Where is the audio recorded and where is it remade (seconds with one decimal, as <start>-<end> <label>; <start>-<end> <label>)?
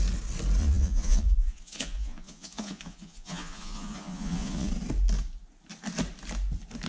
0.0-0.6 recorded; 0.6-4.7 remade; 4.7-6.9 recorded